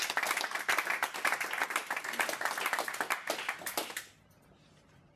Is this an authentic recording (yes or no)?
yes